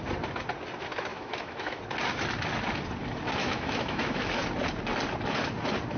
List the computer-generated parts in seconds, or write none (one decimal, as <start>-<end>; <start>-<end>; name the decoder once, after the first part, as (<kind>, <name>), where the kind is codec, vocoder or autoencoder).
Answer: 1.1-1.8 (autoencoder, DAC-VAE); 3.4-4.4